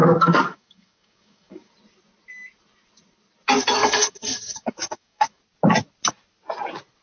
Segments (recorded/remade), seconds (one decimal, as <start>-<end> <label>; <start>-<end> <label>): 0.0-1.7 remade; 1.7-3.8 recorded; 3.8-5.4 remade; 5.4-7.0 recorded